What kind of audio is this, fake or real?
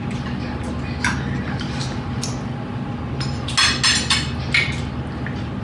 real